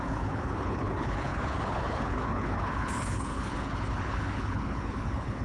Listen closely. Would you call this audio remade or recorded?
remade